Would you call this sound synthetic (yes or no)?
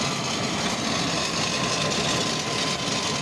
no